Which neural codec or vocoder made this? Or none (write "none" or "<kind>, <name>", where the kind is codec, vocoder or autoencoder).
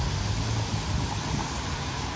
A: none